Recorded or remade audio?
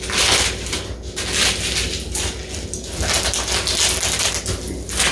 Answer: recorded